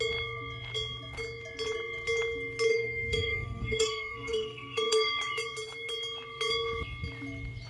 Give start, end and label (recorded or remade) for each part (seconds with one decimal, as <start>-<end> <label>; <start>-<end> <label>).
0.0-2.7 recorded; 2.7-5.1 remade; 5.1-7.7 recorded